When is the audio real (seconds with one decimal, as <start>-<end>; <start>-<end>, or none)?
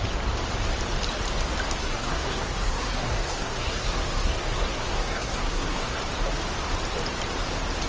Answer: 0.0-1.8; 6.0-7.9